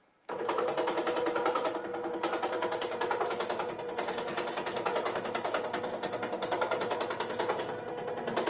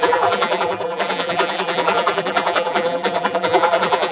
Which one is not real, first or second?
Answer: second